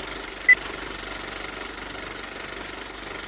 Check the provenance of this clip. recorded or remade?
recorded